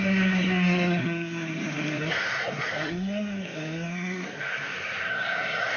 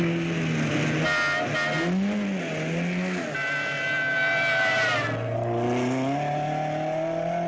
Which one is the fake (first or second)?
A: first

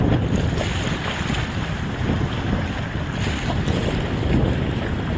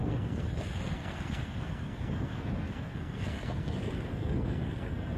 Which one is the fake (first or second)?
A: second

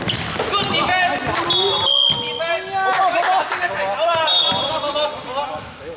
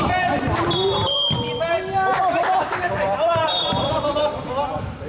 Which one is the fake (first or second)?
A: second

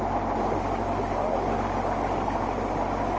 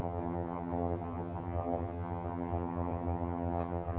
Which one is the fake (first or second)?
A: second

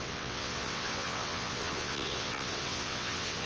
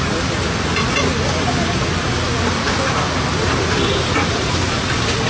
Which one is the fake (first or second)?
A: first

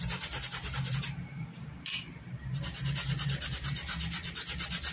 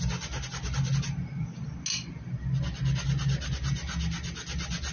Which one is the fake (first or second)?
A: first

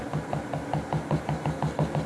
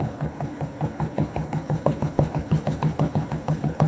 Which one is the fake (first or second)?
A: second